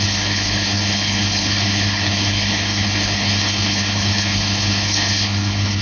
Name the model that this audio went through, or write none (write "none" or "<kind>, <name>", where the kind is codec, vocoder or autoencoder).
codec, HILCodec